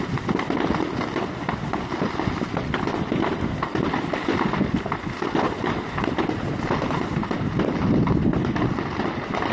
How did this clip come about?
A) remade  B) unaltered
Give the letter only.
B